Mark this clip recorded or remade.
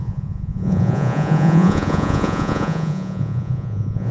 remade